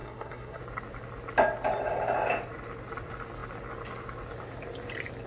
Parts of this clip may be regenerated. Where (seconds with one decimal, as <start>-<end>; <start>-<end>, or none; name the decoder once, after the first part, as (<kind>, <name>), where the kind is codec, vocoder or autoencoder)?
0.0-0.6 (codec, SNAC)